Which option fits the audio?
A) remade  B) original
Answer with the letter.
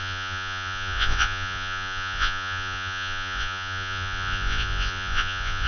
A